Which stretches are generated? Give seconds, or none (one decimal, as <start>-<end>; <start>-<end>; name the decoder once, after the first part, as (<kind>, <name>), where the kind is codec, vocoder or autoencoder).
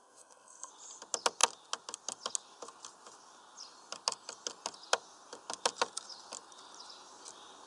0.0-0.7 (codec, SNAC)